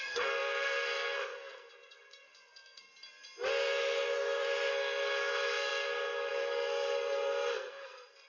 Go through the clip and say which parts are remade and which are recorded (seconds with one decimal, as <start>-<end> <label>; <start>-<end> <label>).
0.0-2.9 remade; 2.9-4.7 recorded; 4.7-8.3 remade